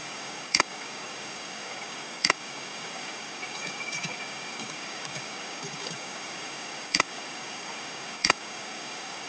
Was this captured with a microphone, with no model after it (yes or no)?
no